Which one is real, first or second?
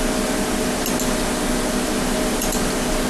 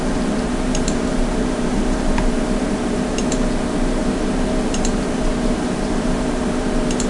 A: first